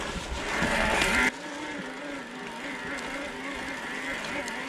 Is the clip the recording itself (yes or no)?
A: yes